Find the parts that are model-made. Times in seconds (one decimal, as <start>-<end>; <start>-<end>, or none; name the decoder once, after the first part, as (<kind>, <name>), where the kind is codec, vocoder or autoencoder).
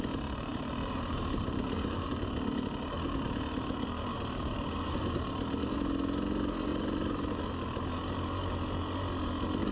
0.5-2.2 (vocoder, BigVGAN v2); 4.1-5.3; 6.7-7.4